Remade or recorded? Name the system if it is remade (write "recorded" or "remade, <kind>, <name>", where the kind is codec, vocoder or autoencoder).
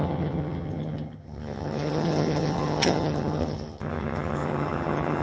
remade, vocoder, HiFi-GAN